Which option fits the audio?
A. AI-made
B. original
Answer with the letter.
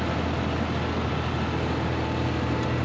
B